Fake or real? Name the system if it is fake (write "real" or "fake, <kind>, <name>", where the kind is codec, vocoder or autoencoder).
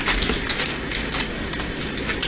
real